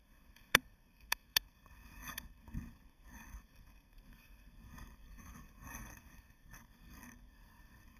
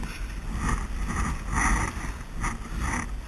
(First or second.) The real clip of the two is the second